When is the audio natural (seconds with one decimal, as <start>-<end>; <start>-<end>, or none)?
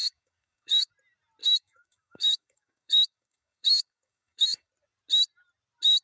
0.9-1.4; 4.7-6.0